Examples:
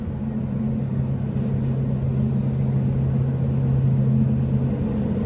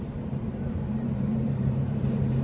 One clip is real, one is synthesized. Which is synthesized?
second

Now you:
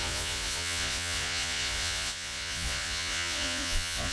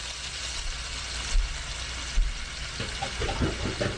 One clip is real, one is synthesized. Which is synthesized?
first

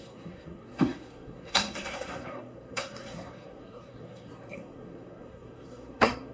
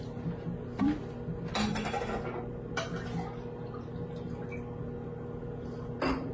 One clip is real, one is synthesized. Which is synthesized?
first